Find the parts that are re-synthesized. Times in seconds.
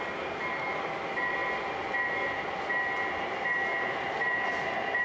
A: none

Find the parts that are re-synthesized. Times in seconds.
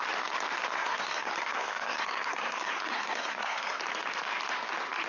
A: 0.7-3.8 (codec, SNAC)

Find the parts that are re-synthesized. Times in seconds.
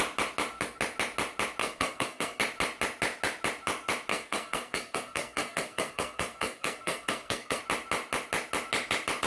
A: 1.6-2.4 (codec, SNAC); 4.1-7.6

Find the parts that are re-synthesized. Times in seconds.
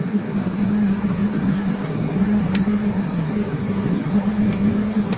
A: 0.0-5.2 (codec, SNAC)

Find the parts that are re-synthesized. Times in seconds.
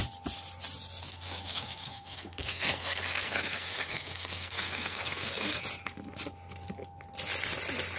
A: 1.0-5.6 (codec, SNAC)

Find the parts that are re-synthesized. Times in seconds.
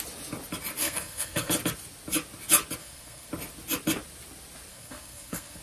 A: 0.8-1.5 (codec, SNAC); 2.8-3.3; 4.7-5.6